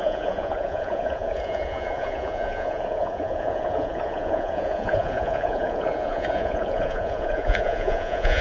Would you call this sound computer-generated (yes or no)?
yes